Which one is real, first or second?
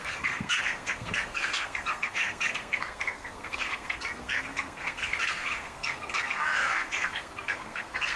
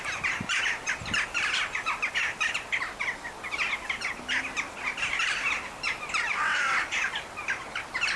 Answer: second